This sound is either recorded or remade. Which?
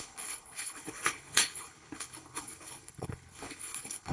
remade